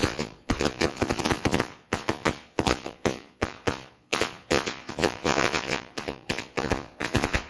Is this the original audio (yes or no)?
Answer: no